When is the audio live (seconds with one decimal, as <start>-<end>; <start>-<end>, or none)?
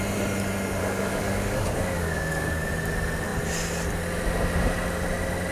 0.0-0.8; 2.7-5.5